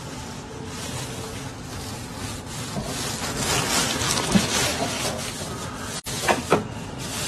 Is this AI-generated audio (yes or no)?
no